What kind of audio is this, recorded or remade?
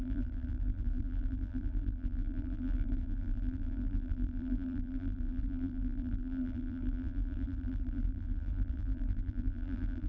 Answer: remade